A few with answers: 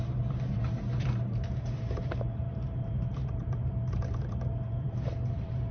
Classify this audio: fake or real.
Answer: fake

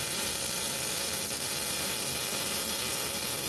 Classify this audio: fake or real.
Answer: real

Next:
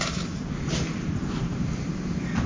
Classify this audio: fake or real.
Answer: real